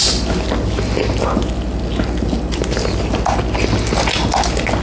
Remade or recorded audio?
recorded